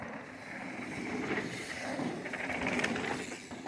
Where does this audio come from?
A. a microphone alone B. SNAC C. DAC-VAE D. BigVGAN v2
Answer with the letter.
D